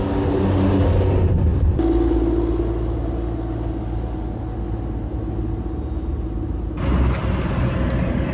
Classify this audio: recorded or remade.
recorded